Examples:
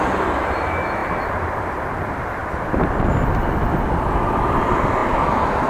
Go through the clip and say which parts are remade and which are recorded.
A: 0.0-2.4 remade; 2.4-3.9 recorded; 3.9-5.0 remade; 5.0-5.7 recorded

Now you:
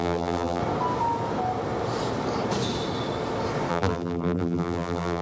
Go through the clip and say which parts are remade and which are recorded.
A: 0.0-0.6 remade; 0.6-3.7 recorded; 3.7-5.2 remade

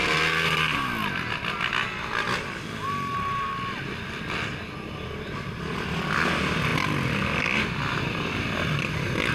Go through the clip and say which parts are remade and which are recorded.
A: 0.0-9.3 recorded